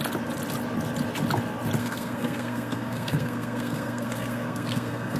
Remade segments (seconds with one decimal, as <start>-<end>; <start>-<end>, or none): 1.8-5.2